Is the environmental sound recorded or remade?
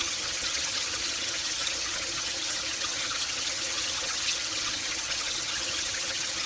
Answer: remade